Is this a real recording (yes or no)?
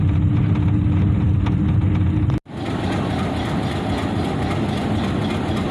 yes